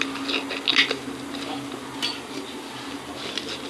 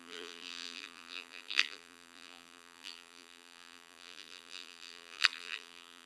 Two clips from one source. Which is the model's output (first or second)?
second